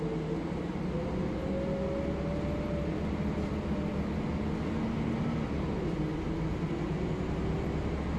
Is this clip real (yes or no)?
yes